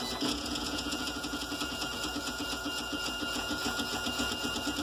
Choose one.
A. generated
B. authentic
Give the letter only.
A